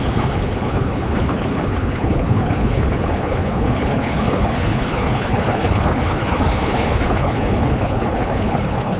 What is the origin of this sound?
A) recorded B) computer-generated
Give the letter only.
B